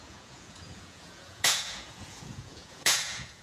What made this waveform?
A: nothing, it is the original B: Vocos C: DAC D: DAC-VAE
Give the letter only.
B